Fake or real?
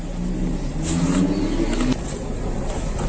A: real